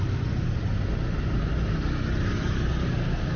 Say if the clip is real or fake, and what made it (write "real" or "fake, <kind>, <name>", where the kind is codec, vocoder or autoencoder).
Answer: real